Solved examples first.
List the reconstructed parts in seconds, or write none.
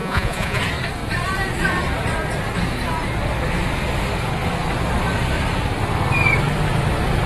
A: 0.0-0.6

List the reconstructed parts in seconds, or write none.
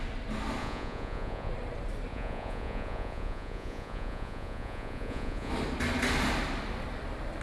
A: 0.6-1.5; 2.1-5.5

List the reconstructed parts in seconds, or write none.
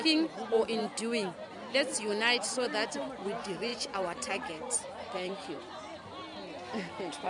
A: 3.7-5.8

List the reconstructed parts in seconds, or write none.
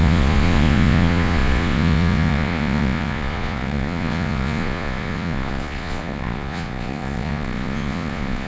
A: 0.0-8.5